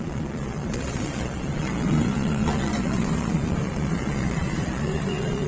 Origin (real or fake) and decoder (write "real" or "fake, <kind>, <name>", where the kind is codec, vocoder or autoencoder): fake, vocoder, Vocos